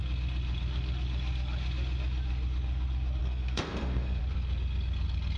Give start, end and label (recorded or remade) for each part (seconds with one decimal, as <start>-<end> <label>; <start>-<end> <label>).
0.0-3.2 recorded; 3.2-4.2 remade; 4.2-5.4 recorded